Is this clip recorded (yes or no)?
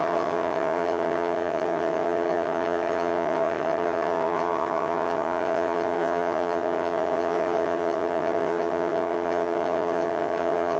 no